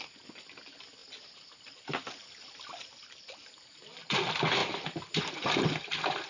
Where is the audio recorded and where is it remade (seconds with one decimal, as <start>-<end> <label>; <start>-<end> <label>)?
0.0-6.3 recorded

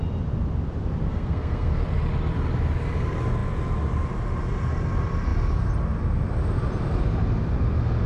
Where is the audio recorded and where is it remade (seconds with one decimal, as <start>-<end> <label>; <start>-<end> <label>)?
0.0-1.1 recorded; 1.1-1.7 remade; 1.7-8.1 recorded

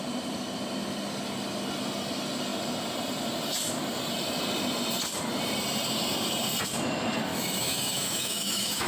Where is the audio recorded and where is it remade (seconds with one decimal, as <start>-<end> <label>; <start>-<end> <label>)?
0.0-7.3 recorded; 7.3-8.9 remade

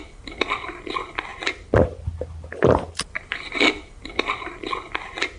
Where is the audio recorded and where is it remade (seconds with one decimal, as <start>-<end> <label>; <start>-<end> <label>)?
0.0-5.4 recorded